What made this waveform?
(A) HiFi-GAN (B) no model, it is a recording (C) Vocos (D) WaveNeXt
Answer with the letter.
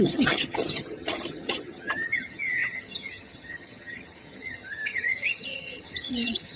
A